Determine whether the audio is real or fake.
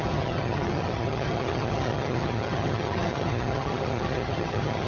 fake